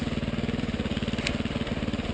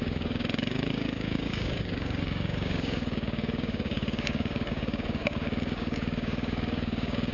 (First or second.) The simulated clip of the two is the second